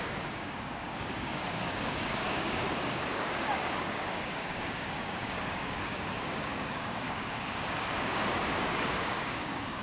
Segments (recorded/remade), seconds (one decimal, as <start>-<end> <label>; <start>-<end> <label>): 0.0-9.8 remade